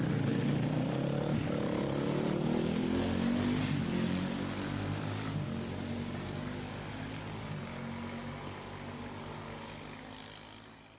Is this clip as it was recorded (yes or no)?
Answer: yes